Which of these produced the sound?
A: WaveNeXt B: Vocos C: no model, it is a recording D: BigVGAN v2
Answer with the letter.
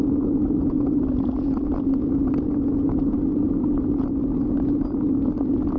C